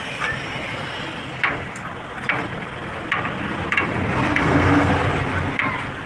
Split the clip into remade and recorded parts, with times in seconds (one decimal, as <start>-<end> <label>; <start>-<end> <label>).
0.0-4.4 recorded; 4.4-4.9 remade; 4.9-6.1 recorded